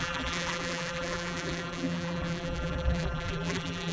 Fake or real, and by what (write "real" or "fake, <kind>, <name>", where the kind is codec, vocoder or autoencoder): fake, vocoder, BigVGAN v2